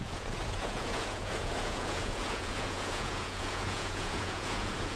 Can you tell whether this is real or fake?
fake